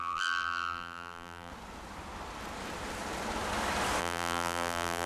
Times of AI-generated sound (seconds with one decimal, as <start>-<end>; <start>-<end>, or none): 0.0-1.5; 4.0-5.1